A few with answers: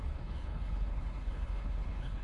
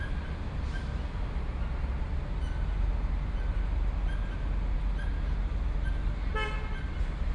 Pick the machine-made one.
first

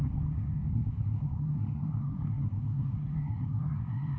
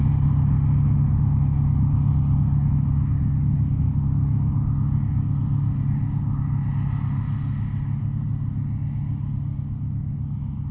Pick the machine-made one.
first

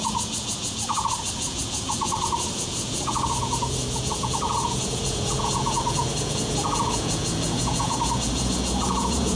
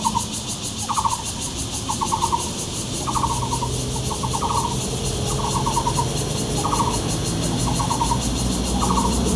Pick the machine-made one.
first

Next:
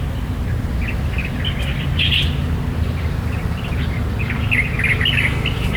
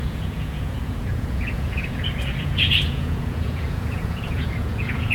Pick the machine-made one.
second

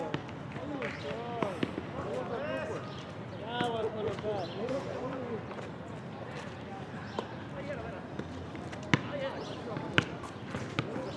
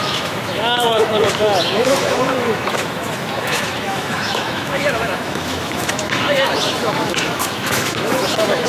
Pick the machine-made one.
second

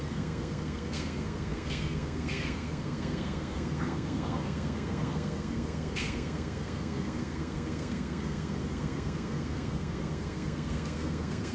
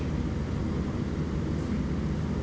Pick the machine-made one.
first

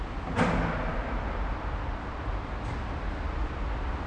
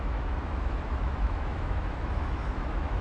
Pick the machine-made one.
second